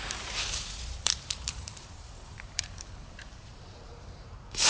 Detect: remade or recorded remade